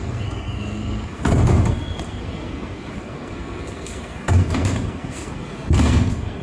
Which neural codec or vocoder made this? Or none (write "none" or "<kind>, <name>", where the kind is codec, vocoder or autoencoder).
codec, SNAC